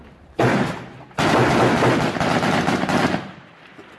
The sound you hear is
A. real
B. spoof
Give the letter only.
A